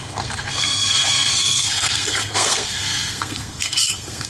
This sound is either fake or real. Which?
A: fake